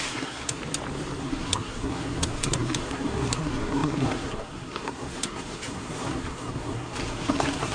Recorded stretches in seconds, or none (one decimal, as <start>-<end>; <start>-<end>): 0.6-1.2

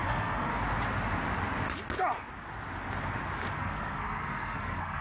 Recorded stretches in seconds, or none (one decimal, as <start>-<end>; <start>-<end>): 0.5-3.5

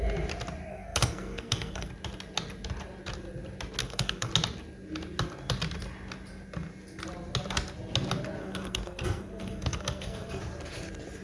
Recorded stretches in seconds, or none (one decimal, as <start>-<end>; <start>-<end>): 0.0-0.7; 1.9-3.8; 4.3-8.4; 10.4-11.2

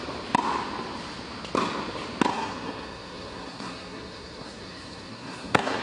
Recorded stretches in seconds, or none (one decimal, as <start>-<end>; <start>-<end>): 0.0-2.3

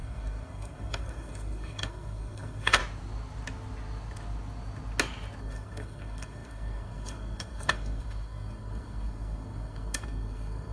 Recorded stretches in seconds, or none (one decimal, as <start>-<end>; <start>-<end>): 2.8-5.4

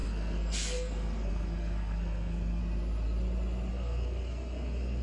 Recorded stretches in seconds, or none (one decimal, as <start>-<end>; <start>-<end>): 2.6-3.7

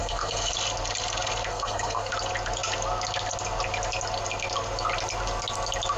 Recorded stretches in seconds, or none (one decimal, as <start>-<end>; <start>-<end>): 0.5-1.5; 2.1-6.0

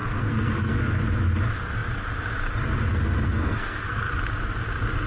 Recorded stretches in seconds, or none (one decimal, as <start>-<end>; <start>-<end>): 1.0-2.9; 4.1-5.1